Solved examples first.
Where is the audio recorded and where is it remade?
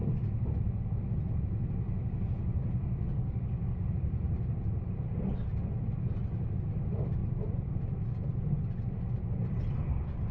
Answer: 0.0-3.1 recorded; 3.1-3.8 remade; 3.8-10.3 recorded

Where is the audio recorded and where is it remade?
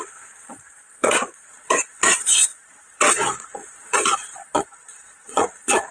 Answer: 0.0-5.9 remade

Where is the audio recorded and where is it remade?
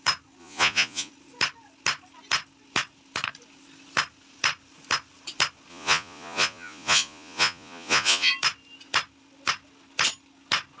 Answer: 0.0-0.4 recorded; 0.4-1.1 remade; 1.1-5.7 recorded; 5.7-8.3 remade; 8.3-10.8 recorded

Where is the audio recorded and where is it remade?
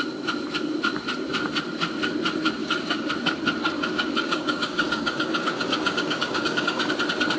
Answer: 0.0-2.6 recorded; 2.6-3.1 remade; 3.1-3.6 recorded; 3.6-6.9 remade; 6.9-7.4 recorded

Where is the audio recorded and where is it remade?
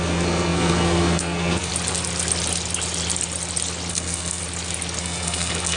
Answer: 0.0-1.7 remade; 1.7-3.9 recorded; 3.9-4.4 remade; 4.4-5.0 recorded; 5.0-5.8 remade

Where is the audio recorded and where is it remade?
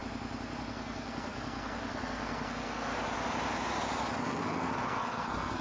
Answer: 0.0-0.7 recorded; 0.7-2.9 remade; 2.9-4.2 recorded; 4.2-5.6 remade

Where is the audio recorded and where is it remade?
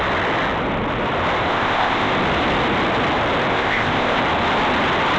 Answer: 0.0-1.5 recorded; 1.5-2.1 remade; 2.1-3.5 recorded; 3.5-4.2 remade; 4.2-5.2 recorded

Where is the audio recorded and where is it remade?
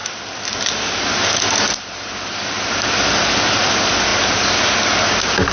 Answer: 0.0-5.5 recorded